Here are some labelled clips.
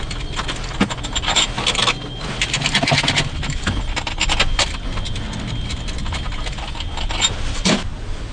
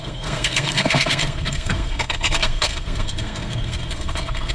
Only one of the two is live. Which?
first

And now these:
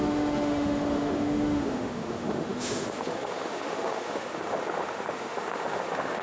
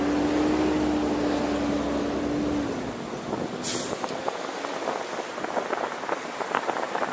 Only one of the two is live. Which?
second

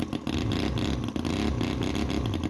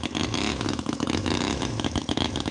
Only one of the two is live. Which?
first